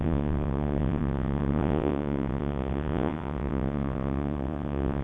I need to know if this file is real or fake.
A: fake